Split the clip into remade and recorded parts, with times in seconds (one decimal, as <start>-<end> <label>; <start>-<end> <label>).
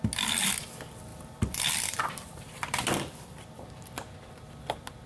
0.0-1.1 recorded; 1.1-3.4 remade; 3.4-5.1 recorded